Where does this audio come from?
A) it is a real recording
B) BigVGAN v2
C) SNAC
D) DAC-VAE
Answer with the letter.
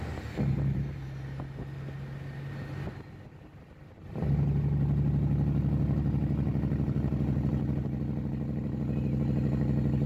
A